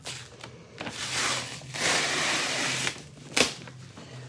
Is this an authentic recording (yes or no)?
yes